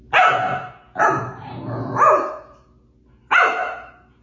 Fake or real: real